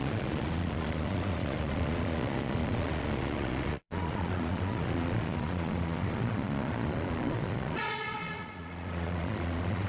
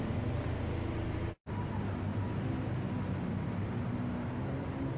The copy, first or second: first